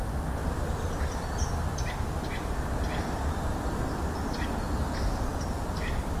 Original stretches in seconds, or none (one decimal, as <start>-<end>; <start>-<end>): 0.0-6.2

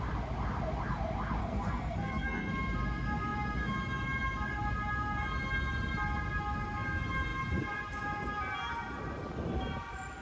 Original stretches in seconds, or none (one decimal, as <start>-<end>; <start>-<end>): 0.0-1.4; 2.5-10.2